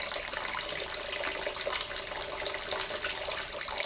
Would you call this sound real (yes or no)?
yes